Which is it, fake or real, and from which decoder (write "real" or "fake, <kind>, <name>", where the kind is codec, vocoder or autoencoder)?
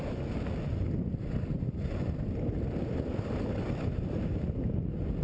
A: real